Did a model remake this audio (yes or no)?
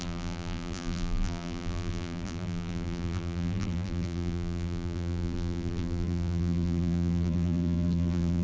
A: yes